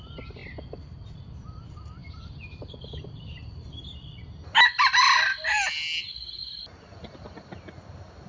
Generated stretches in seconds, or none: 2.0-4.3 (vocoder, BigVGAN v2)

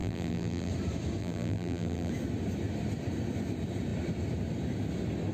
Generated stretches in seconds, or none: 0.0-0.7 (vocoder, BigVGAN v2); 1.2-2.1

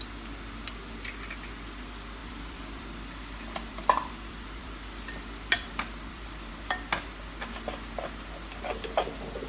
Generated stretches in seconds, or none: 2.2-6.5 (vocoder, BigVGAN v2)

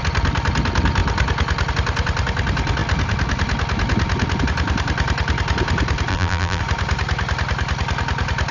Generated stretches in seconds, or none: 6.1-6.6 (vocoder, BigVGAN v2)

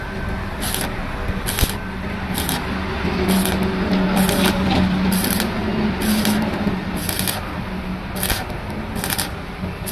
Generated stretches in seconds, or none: none

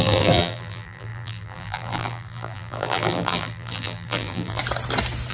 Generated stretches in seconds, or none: 0.0-4.6 (vocoder, BigVGAN v2)